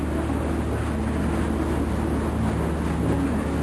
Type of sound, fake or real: real